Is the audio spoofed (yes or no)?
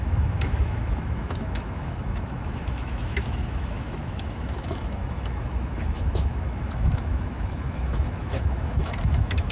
yes